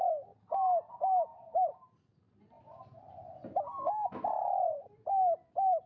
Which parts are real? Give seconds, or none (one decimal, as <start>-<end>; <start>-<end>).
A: 0.0-5.9